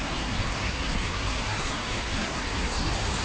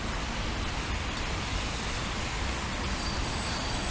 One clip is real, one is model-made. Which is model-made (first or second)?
first